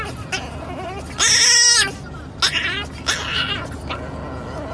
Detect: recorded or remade recorded